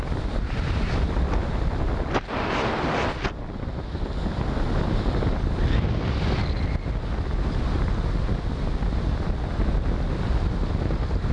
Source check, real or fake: real